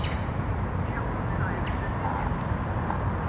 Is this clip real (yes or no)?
yes